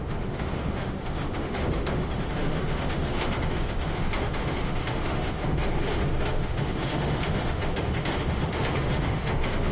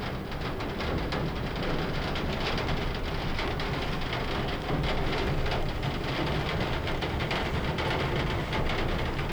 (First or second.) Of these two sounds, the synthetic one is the first